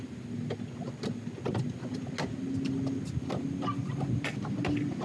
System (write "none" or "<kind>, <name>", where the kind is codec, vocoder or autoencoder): none